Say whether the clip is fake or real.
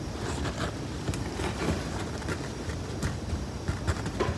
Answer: real